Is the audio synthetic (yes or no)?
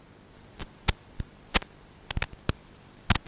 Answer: no